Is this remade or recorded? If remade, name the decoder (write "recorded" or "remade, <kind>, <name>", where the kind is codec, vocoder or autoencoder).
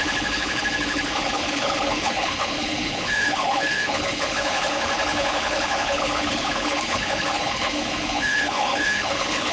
remade, codec, HILCodec